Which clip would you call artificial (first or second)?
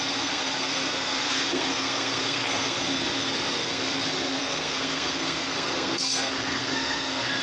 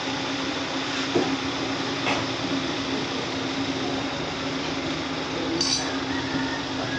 first